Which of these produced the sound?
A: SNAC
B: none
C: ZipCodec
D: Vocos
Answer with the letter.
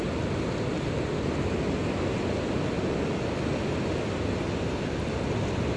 B